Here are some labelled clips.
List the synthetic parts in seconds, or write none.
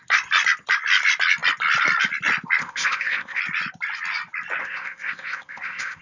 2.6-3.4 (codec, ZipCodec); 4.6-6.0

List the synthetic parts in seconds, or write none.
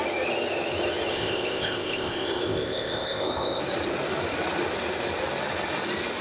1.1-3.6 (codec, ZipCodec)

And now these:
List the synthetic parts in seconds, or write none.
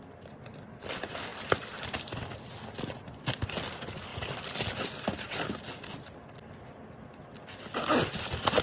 none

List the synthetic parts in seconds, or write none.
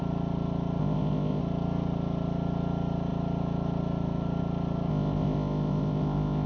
0.8-1.4 (codec, ZipCodec); 4.9-6.5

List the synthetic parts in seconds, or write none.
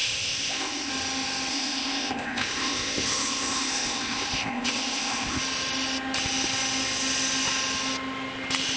0.0-0.9 (codec, ZipCodec); 1.5-5.4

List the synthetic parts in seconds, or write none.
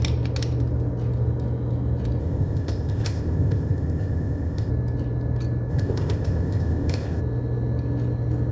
2.2-4.7 (codec, ZipCodec); 5.7-7.2